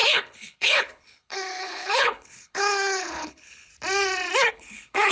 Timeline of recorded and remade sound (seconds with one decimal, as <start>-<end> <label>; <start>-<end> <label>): 0.0-3.7 remade; 3.7-4.5 recorded; 4.5-5.1 remade